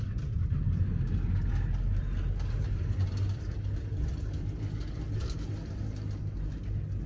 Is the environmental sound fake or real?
real